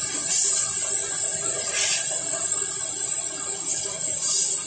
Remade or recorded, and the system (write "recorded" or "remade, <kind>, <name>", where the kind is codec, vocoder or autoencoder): recorded